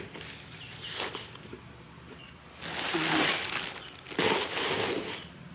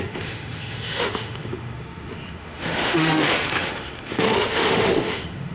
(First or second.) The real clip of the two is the first